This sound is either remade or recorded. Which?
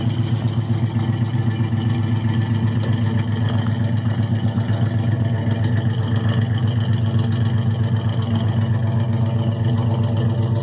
recorded